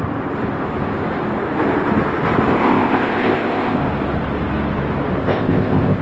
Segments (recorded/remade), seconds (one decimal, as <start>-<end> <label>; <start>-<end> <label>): 0.0-2.5 recorded; 2.5-3.8 remade; 3.8-5.2 recorded; 5.2-6.0 remade